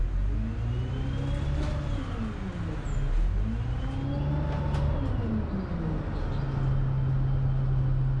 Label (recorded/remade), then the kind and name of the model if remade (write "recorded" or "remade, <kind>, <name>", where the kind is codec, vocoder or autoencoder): recorded